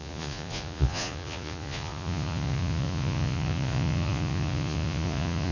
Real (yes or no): no